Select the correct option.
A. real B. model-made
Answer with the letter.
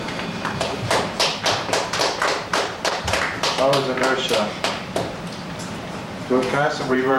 B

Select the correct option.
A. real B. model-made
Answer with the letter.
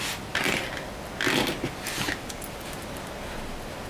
A